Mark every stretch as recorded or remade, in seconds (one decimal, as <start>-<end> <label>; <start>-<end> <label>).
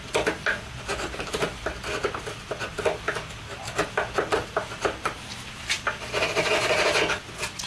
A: 0.0-7.7 recorded